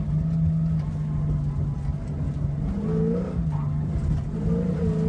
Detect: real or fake real